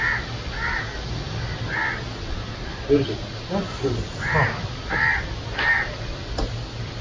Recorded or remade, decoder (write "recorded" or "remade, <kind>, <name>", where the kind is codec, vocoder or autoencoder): recorded